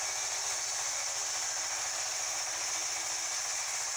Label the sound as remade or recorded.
recorded